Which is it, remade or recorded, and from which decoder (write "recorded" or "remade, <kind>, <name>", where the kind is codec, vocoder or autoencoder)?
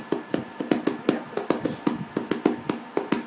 recorded